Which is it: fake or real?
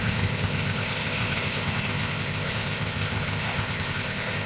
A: fake